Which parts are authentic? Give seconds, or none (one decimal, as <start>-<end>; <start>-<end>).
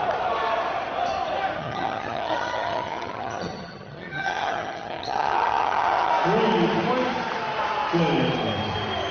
0.0-1.6; 6.1-9.1